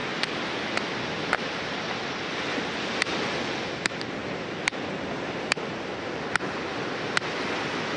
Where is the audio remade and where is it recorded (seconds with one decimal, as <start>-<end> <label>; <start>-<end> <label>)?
0.0-8.0 recorded